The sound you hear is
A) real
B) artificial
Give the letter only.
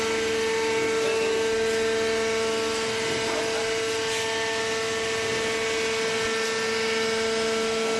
A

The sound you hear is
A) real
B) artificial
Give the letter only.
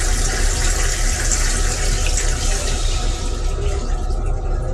A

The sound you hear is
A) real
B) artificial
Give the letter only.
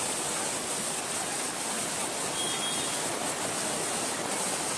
A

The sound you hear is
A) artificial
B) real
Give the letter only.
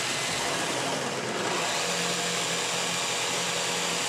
B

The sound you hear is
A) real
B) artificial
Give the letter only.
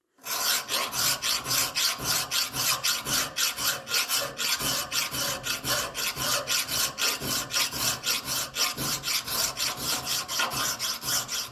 A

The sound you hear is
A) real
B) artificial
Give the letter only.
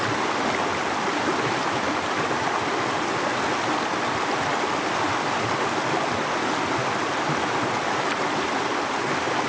A